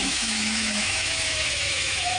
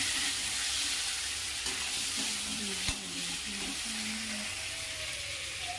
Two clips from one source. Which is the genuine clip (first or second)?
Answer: second